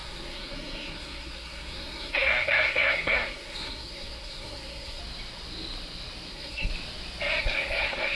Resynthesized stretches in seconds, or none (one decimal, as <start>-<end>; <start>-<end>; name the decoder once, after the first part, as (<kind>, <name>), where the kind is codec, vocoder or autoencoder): 0.0-5.0 (codec, SNAC); 6.3-6.7; 7.4-8.1